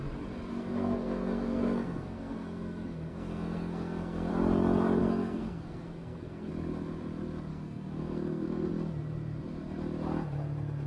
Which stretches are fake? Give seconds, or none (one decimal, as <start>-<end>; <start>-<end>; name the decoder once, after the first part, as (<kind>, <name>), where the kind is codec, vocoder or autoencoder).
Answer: 0.5-4.3 (codec, SNAC); 5.0-6.5; 7.5-8.7